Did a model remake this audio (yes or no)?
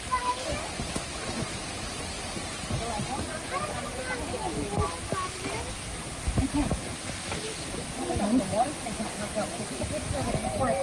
no